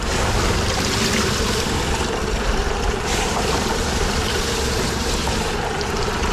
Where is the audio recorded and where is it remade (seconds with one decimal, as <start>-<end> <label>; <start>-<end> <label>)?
0.0-2.2 recorded; 2.2-6.3 remade